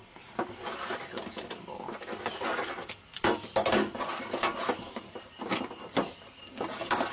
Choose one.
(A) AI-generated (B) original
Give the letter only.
A